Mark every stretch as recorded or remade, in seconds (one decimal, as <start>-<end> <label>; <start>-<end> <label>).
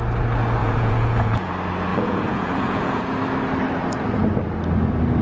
0.0-0.6 recorded; 0.6-1.5 remade; 1.5-1.9 recorded; 1.9-3.0 remade; 3.0-5.2 recorded